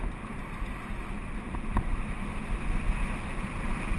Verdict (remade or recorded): recorded